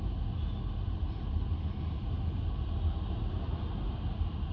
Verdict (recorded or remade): recorded